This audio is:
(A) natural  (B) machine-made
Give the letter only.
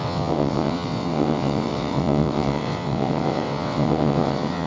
B